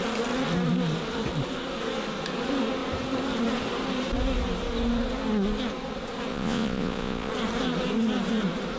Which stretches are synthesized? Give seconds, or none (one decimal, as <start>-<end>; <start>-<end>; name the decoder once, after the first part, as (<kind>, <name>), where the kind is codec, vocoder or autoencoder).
6.3-7.3 (vocoder, Vocos)